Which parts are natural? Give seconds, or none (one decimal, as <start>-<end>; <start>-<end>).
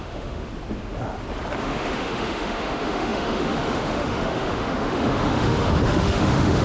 0.5-1.6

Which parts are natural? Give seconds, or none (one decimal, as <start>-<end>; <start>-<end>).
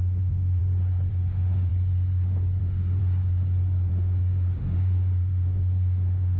0.6-1.1; 1.7-2.6; 3.0-3.9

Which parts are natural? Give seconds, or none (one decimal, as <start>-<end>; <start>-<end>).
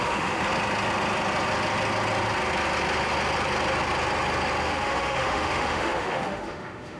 0.4-4.6